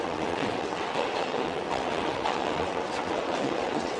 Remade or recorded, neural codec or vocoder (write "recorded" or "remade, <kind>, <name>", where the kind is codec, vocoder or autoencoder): remade, vocoder, WaveNeXt